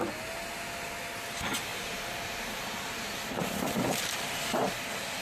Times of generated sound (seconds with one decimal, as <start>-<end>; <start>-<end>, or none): 1.7-4.8